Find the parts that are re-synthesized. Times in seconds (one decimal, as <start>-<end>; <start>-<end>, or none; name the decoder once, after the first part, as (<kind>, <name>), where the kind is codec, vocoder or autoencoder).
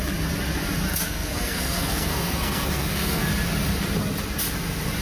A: 0.9-3.3 (codec, SNAC)